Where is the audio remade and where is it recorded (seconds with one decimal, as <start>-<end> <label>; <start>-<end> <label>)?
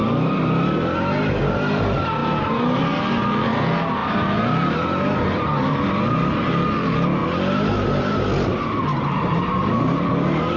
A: 0.0-10.6 recorded